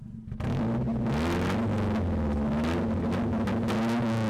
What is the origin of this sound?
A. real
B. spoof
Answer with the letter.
A